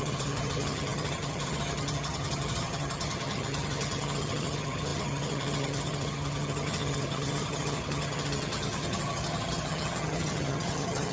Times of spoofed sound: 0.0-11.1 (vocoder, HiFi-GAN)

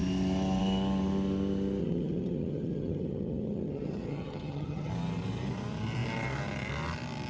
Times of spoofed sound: 1.8-4.9 (vocoder, HiFi-GAN)

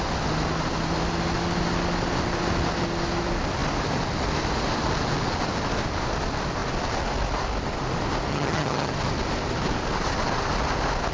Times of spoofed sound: 8.3-8.9 (vocoder, HiFi-GAN)

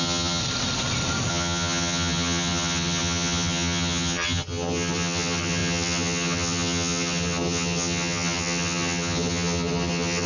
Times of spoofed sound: 0.0-0.4 (vocoder, HiFi-GAN); 1.3-10.3

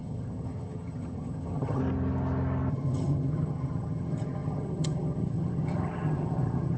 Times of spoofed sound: 0.0-1.8 (vocoder, HiFi-GAN); 2.7-6.8

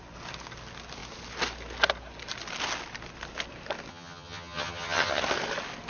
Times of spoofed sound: 3.9-5.2 (vocoder, HiFi-GAN)